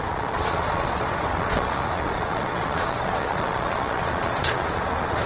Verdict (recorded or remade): remade